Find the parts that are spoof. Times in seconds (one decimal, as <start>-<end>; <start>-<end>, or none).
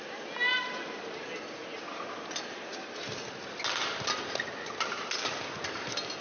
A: none